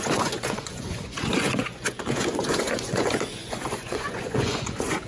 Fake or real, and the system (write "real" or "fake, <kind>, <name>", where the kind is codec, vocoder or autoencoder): fake, vocoder, Vocos